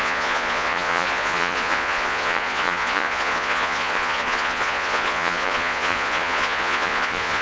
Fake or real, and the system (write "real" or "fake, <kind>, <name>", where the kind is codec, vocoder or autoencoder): fake, vocoder, Vocos